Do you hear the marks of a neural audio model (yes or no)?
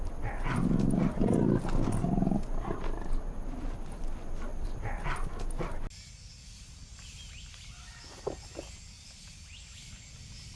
no